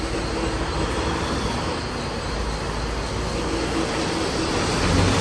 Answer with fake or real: real